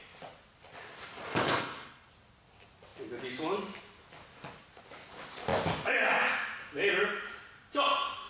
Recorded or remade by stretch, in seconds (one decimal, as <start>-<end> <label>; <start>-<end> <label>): 0.0-1.3 recorded; 1.3-2.1 remade; 2.1-8.3 recorded